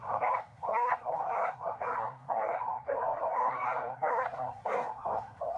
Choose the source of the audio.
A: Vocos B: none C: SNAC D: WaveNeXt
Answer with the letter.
C